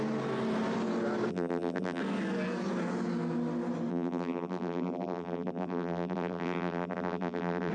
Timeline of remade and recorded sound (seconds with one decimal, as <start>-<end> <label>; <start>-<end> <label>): 0.0-1.3 recorded; 1.3-2.0 remade; 2.0-3.9 recorded; 3.9-7.7 remade